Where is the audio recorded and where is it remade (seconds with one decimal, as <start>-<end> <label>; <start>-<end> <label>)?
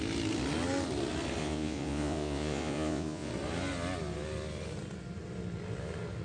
0.0-1.4 recorded; 1.4-3.3 remade; 3.3-6.2 recorded